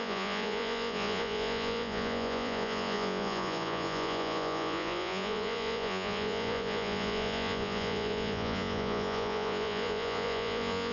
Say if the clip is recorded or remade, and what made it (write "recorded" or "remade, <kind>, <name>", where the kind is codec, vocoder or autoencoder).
remade, vocoder, Vocos